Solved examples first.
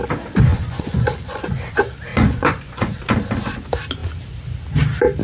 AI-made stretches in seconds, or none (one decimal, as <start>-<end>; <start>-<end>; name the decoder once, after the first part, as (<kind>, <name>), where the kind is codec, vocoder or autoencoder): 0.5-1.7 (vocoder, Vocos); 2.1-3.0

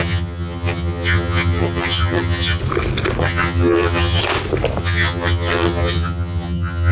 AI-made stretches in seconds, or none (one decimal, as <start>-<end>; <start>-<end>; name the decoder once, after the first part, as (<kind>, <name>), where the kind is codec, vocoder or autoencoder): 0.0-2.6 (vocoder, HiFi-GAN); 3.2-4.2; 4.8-6.9

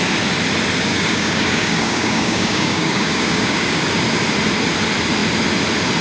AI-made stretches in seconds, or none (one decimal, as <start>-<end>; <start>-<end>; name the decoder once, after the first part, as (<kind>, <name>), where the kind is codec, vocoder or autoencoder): 0.9-3.8 (codec, DAC)

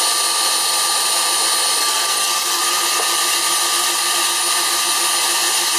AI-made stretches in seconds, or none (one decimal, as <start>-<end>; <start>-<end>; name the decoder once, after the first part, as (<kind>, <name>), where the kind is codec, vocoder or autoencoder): 1.8-2.6 (codec, SNAC)

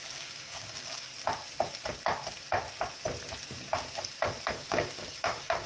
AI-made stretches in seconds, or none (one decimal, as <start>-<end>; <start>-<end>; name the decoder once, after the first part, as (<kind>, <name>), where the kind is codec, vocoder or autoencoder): 0.0-1.1 (codec, DAC); 4.5-5.7

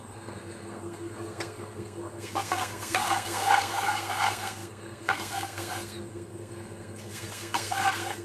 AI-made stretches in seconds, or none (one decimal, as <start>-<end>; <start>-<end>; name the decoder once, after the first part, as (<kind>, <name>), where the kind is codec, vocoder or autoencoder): 0.0-8.2 (codec, SNAC)